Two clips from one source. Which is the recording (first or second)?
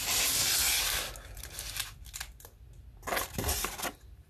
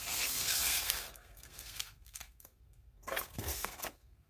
first